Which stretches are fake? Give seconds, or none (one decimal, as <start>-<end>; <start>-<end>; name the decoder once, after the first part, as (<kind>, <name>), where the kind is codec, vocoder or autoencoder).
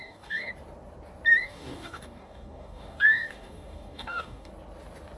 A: 0.0-0.5 (codec, DAC); 1.4-4.5